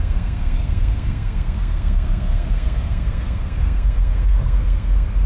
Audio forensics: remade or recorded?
remade